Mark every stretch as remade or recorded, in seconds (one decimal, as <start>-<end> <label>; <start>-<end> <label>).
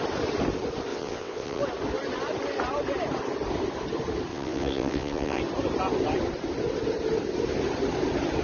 0.0-0.9 recorded; 0.9-1.6 remade; 1.6-4.3 recorded; 4.3-5.4 remade; 5.4-8.4 recorded